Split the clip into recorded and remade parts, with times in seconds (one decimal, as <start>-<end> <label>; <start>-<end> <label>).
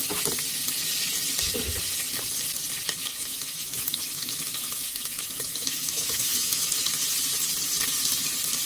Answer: 0.0-3.0 recorded; 3.0-6.9 remade; 6.9-8.7 recorded